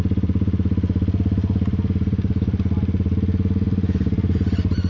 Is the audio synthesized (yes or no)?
no